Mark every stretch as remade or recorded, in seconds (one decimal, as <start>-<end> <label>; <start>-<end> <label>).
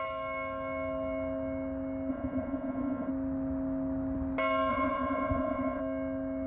0.0-2.1 recorded; 2.1-3.1 remade; 3.1-4.7 recorded; 4.7-5.8 remade; 5.8-6.5 recorded